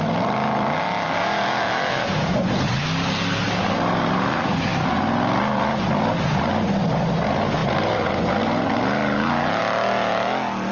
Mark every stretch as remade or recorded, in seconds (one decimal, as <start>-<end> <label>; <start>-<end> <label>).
0.0-10.7 recorded